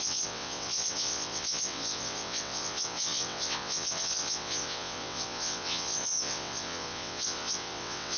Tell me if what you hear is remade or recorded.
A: remade